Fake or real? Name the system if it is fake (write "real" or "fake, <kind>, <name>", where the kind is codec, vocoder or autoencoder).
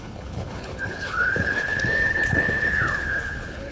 fake, codec, HILCodec